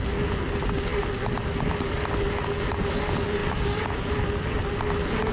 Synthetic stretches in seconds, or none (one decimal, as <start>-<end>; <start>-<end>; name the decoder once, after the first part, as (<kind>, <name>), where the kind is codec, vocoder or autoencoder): 3.4-4.6 (vocoder, BigVGAN v2)

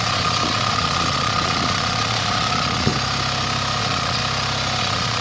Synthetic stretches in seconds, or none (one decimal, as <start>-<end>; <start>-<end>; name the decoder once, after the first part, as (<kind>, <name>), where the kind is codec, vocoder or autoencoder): 0.0-2.9 (vocoder, Vocos); 3.8-4.2; 4.8-5.2

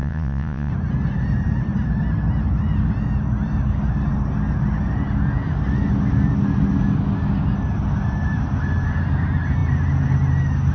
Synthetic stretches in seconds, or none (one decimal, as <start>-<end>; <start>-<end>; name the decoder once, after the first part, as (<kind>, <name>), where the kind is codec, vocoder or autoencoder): 0.0-0.7 (vocoder, Vocos)

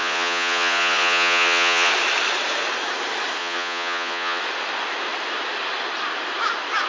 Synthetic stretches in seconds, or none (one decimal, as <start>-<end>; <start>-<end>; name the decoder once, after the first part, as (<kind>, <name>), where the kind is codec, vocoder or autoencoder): 0.0-1.9 (vocoder, Vocos); 3.4-4.4